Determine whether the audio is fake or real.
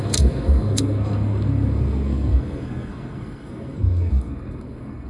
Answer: fake